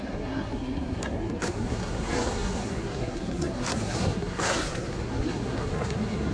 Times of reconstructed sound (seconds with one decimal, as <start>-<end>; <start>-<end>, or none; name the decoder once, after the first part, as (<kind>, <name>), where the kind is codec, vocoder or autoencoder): 0.0-6.3 (codec, SNAC)